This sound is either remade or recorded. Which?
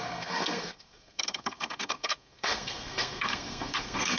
remade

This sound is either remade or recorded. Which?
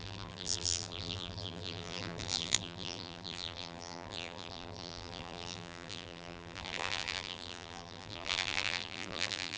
remade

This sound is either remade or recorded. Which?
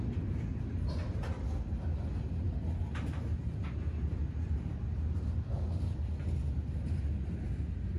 recorded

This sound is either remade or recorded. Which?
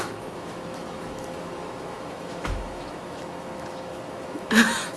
remade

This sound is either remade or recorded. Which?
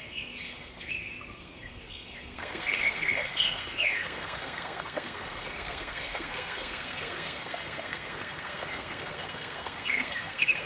remade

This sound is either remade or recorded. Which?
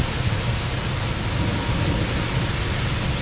recorded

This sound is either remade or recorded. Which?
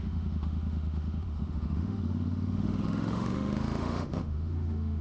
remade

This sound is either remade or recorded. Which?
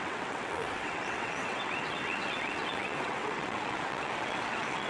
remade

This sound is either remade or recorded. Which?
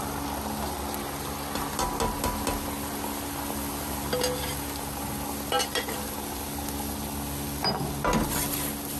recorded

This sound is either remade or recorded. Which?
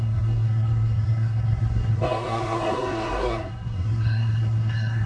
remade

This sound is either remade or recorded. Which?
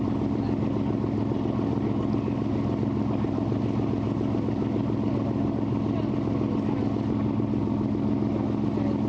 recorded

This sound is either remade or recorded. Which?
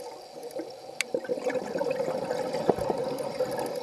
recorded